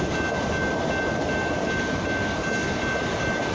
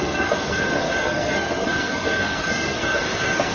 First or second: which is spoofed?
second